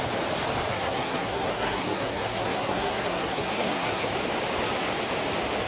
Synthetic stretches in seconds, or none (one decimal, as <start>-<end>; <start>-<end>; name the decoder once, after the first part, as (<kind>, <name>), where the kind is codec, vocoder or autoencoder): 0.7-4.1 (codec, SNAC)

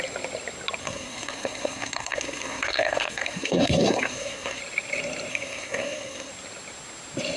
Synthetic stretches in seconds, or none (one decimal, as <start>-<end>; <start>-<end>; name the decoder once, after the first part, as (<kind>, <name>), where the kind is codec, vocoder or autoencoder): 0.8-4.6 (codec, SNAC); 5.3-6.3

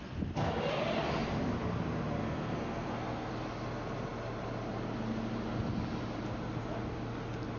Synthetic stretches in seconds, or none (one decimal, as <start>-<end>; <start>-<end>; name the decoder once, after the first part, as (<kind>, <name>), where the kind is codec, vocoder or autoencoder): 2.2-3.3 (codec, SNAC)

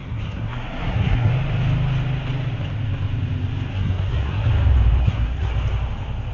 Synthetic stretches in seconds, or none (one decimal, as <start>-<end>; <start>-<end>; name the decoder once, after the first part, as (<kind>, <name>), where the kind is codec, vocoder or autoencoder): 0.0-1.3 (codec, SNAC); 3.7-4.5; 5.0-5.5

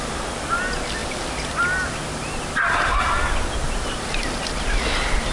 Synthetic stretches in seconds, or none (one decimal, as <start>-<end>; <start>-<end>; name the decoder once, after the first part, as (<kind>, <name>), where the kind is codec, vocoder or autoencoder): none

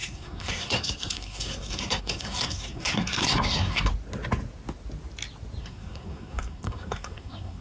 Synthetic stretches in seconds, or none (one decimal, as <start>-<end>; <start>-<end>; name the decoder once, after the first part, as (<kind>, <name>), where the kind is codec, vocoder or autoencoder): 0.0-3.9 (codec, SNAC); 5.6-7.6

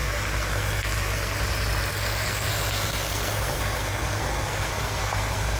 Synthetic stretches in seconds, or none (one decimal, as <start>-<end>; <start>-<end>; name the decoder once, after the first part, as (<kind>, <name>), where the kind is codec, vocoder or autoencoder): 0.0-1.4 (codec, SNAC); 1.9-5.6

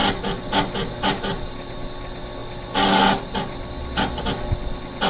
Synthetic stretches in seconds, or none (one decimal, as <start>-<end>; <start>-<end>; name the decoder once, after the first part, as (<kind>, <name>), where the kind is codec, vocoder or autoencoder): none